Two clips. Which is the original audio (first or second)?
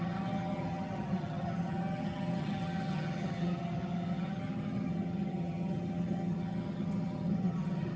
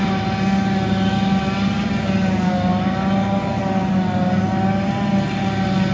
second